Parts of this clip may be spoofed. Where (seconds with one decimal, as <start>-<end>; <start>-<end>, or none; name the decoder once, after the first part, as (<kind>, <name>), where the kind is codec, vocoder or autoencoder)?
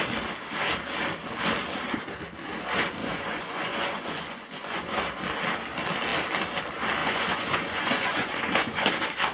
3.0-5.0 (vocoder, Vocos); 7.0-8.9